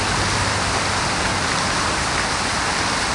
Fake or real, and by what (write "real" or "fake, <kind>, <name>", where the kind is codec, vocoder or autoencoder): real